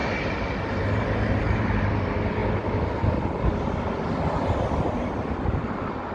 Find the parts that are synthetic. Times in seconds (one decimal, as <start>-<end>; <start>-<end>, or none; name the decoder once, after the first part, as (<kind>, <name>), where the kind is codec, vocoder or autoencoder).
none